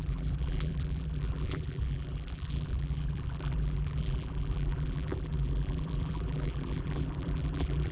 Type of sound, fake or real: fake